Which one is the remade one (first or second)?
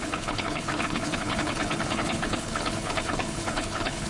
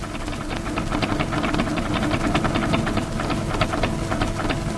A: first